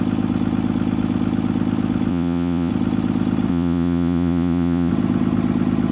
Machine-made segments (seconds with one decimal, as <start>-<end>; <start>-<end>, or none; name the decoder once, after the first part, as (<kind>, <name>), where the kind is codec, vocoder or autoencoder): 2.1-2.7 (vocoder, Vocos); 3.5-4.9